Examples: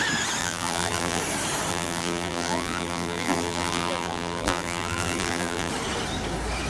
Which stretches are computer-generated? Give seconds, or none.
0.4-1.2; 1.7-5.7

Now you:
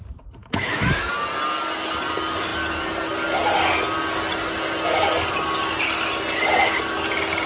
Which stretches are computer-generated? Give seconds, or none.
0.4-1.1

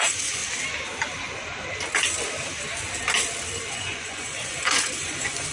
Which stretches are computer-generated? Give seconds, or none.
0.0-0.4; 3.7-5.5

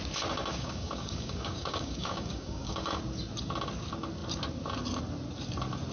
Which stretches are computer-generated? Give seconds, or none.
0.5-3.0

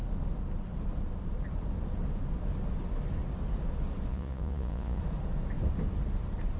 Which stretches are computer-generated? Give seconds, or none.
4.1-5.0

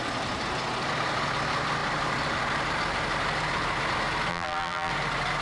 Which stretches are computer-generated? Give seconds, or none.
4.3-4.9